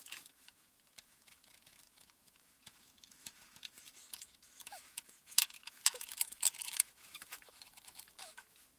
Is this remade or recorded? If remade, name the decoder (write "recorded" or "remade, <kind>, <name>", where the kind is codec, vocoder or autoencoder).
remade, autoencoder, DAC-VAE